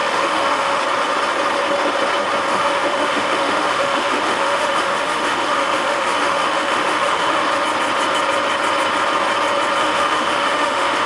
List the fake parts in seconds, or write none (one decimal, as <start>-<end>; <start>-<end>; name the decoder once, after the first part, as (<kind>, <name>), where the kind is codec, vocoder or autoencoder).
0.0-0.8 (autoencoder, DAC-VAE); 2.5-7.4; 9.8-11.1